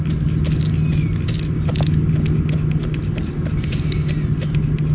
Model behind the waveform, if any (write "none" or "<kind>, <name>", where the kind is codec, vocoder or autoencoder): none